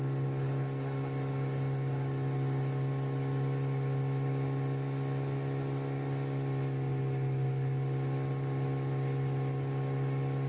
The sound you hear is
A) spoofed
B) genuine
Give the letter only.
B